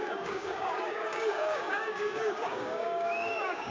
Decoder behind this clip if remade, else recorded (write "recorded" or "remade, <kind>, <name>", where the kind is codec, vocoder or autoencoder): remade, codec, DAC